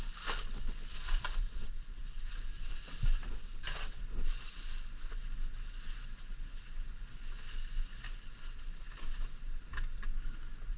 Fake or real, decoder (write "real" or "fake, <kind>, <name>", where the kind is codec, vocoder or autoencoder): real